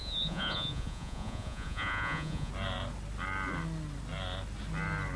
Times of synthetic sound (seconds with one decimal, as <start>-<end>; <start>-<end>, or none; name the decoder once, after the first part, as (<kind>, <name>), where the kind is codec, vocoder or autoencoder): 0.0-2.5 (vocoder, Vocos)